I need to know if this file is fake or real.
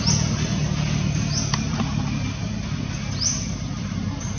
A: real